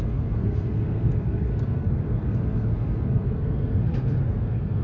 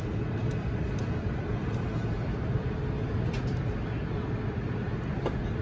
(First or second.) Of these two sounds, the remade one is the first